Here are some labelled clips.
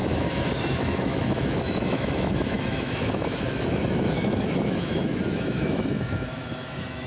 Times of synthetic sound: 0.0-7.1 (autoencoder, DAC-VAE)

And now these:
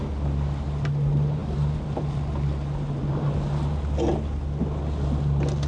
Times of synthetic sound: none

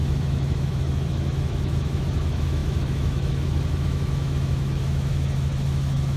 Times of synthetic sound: 0.0-6.2 (autoencoder, DAC-VAE)

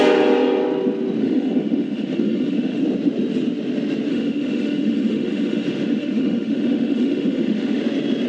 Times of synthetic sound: 1.2-2.8 (autoencoder, DAC-VAE); 4.1-7.8

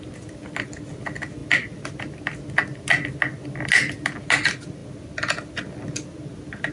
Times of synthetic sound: none

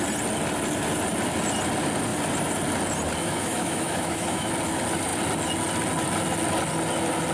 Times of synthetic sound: 3.2-4.5 (autoencoder, DAC-VAE)

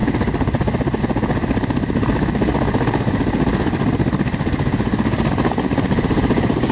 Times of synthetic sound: none

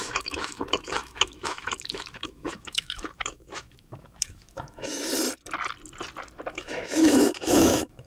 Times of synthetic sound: 0.0-4.9 (autoencoder, DAC-VAE); 6.5-8.1